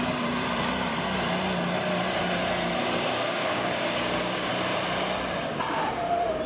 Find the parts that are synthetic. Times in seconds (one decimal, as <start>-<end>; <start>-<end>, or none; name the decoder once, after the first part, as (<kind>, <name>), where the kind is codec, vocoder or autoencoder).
2.8-4.5 (codec, DAC)